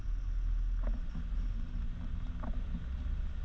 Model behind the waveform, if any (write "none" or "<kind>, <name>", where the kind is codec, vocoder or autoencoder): none